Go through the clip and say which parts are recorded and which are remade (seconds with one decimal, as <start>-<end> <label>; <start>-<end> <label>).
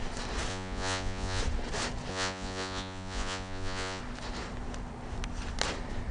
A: 0.0-0.5 recorded; 0.5-1.4 remade; 1.4-2.1 recorded; 2.1-4.0 remade; 4.0-6.1 recorded